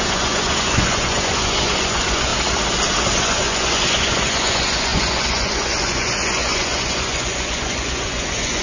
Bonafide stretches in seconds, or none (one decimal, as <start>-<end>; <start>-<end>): 2.3-3.2